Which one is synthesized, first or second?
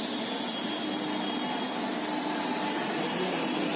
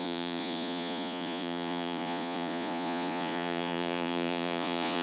second